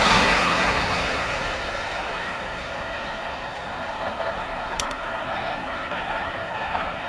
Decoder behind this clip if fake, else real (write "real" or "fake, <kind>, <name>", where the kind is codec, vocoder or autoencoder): fake, codec, SNAC